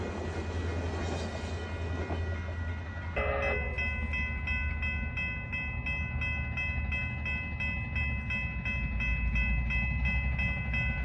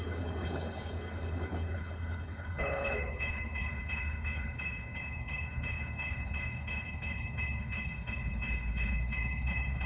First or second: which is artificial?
second